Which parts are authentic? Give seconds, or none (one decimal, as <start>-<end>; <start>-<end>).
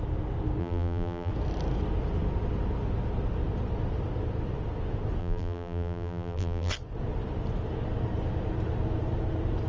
0.0-0.6; 1.3-5.2; 6.7-9.7